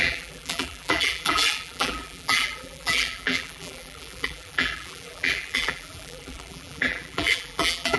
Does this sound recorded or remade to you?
remade